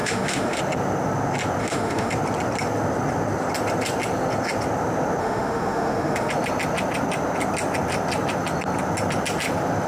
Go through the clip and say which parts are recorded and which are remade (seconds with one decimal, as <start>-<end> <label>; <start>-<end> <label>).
0.0-0.6 remade; 0.6-1.6 recorded; 1.6-2.1 remade; 2.1-5.2 recorded; 5.2-6.3 remade; 6.3-9.9 recorded

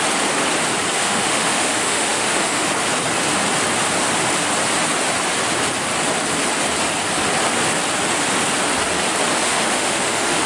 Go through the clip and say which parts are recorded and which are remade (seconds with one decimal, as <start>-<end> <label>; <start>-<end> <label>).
0.0-1.0 recorded; 1.0-2.7 remade; 2.7-9.5 recorded; 9.5-10.5 remade